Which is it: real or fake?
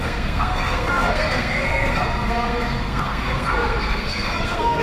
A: fake